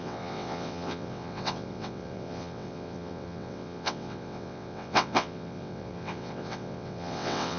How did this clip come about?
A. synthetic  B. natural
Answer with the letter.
A